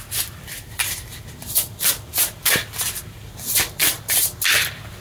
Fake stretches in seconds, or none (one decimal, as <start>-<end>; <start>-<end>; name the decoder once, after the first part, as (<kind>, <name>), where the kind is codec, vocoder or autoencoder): none